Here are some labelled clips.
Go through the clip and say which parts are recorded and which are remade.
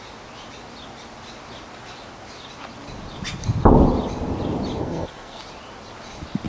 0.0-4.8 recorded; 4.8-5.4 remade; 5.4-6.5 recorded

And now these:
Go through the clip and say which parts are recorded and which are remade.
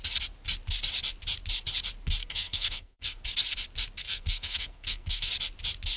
0.0-2.2 recorded; 2.2-3.2 remade; 3.2-4.0 recorded; 4.0-5.3 remade; 5.3-6.0 recorded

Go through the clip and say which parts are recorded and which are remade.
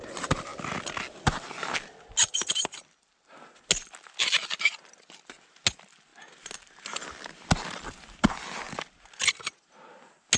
0.0-10.4 recorded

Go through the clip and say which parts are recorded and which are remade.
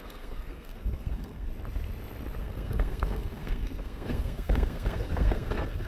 0.0-1.5 remade; 1.5-2.4 recorded; 2.4-5.9 remade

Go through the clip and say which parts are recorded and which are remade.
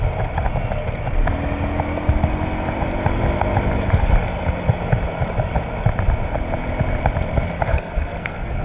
0.0-7.7 recorded; 7.7-8.6 remade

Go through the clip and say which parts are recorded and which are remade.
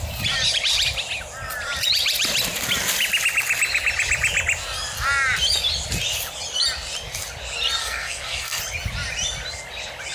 0.0-7.8 recorded; 7.8-8.6 remade; 8.6-10.1 recorded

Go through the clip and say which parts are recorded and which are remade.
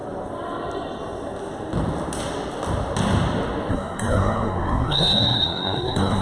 0.0-3.7 recorded; 3.7-6.2 remade